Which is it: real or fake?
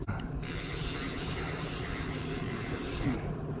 fake